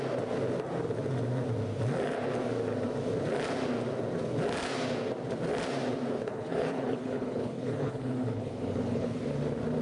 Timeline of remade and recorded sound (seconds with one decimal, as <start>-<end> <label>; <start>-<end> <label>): 0.0-6.3 recorded; 6.3-9.2 remade; 9.2-9.8 recorded